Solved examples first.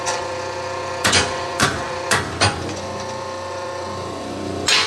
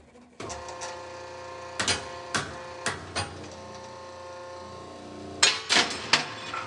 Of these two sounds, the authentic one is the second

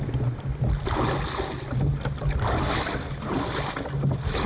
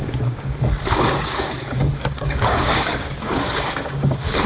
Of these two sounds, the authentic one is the first